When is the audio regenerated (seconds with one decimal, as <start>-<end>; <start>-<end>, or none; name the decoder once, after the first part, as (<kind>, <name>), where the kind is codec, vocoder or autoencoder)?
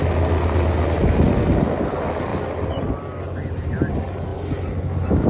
none